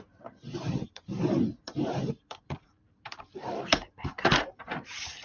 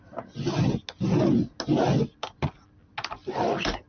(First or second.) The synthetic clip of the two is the first